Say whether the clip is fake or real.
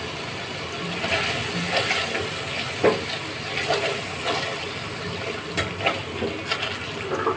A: real